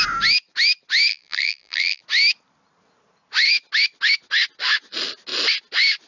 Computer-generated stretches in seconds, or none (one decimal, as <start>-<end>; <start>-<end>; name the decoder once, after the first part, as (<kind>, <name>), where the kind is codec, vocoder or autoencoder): 1.1-2.0 (vocoder, BigVGAN v2)